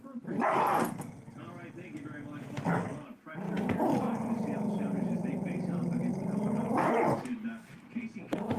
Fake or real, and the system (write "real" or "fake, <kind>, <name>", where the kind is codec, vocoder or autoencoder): real